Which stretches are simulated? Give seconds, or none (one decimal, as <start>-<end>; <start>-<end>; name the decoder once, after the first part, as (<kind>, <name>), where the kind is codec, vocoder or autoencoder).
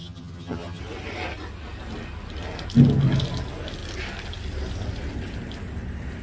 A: 0.0-0.8 (vocoder, HiFi-GAN)